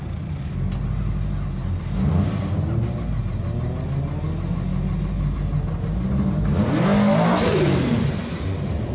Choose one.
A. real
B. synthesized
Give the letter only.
A